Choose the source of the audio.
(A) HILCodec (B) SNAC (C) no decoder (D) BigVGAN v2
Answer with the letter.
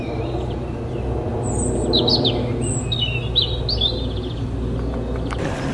C